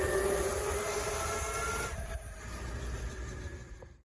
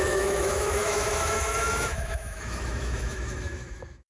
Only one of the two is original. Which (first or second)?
first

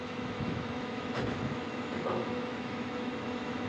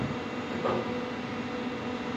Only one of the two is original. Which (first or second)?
second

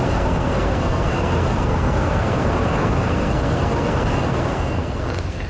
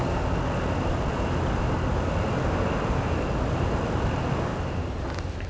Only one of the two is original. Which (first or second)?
second